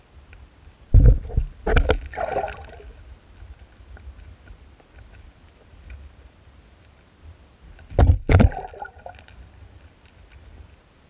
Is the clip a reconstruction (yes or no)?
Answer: no